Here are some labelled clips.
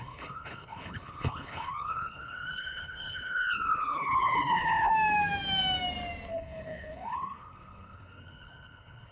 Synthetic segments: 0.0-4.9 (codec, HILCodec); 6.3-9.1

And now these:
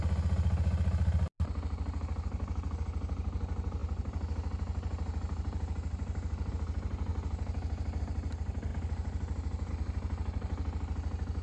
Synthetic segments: none

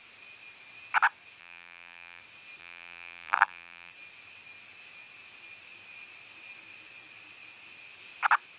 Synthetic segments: 1.4-2.2 (vocoder, BigVGAN v2); 2.6-3.9

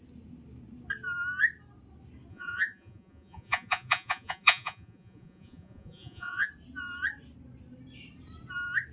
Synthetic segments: 2.3-6.5 (vocoder, Vocos)

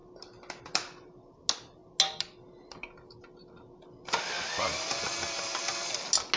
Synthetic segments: none

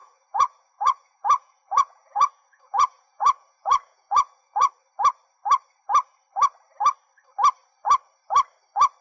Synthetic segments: 0.0-4.7 (vocoder, Vocos)